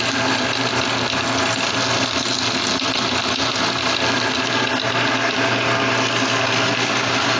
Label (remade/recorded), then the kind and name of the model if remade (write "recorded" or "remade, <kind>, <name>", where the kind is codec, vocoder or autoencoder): recorded